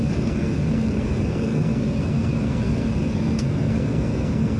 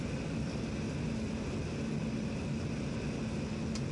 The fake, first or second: first